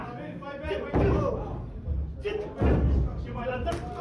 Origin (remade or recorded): recorded